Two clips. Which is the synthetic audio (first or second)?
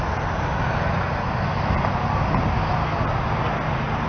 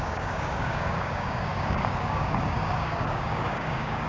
second